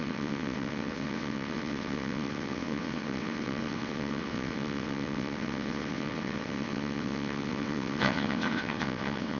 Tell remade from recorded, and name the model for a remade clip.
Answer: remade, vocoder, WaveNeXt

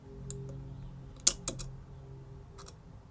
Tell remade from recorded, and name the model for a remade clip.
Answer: recorded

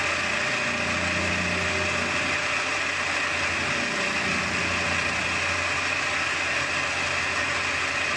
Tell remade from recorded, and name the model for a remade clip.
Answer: recorded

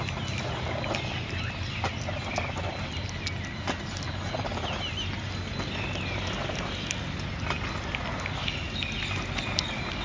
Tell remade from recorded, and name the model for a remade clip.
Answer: recorded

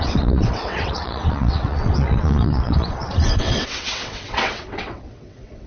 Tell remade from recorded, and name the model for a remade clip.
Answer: remade, vocoder, WaveNeXt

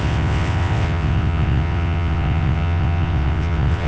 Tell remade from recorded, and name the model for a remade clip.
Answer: remade, vocoder, WaveNeXt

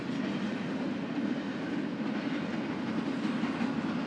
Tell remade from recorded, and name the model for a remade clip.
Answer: recorded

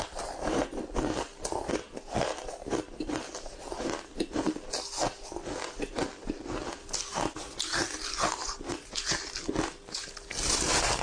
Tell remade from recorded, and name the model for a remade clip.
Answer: recorded